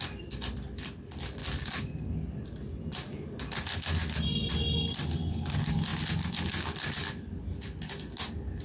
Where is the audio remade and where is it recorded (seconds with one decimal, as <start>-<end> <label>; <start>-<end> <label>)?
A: 0.0-8.6 recorded

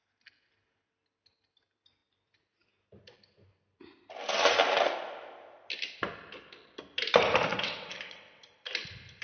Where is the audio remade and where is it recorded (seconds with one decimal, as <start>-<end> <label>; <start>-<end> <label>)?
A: 0.0-7.5 recorded; 7.5-8.4 remade; 8.4-9.2 recorded

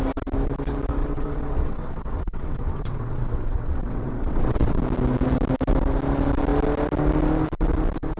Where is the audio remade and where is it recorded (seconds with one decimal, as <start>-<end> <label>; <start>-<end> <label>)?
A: 0.0-1.0 recorded; 1.0-4.8 remade; 4.8-8.2 recorded

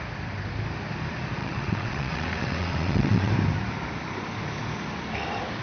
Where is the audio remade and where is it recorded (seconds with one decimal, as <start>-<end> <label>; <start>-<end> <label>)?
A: 0.0-1.4 recorded; 1.4-3.3 remade; 3.3-5.6 recorded

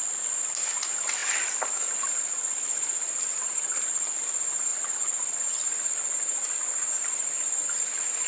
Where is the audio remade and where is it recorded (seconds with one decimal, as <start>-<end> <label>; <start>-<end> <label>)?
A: 0.0-8.3 recorded

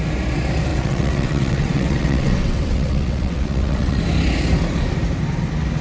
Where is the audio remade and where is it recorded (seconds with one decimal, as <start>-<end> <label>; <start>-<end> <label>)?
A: 0.0-0.7 recorded; 0.7-4.0 remade; 4.0-5.8 recorded